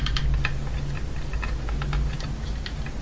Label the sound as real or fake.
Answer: real